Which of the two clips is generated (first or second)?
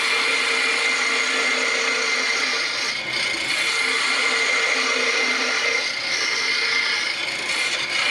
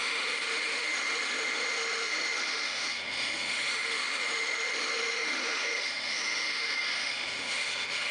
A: second